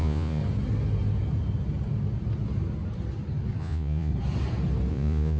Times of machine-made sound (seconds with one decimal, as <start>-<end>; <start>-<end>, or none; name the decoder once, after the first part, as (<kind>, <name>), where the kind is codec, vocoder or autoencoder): 0.0-0.4 (vocoder, Vocos); 3.6-4.1; 4.9-5.4